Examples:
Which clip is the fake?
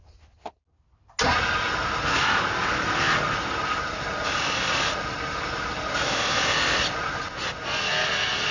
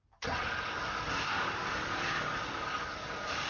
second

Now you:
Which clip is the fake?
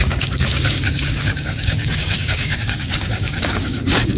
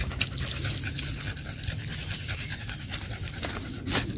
first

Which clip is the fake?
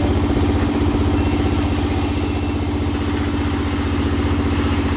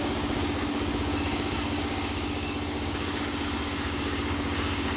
second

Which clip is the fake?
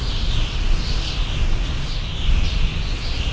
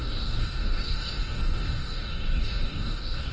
second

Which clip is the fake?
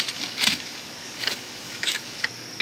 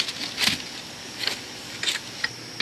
first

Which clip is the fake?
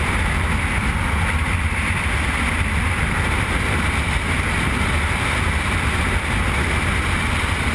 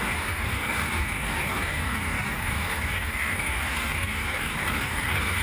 second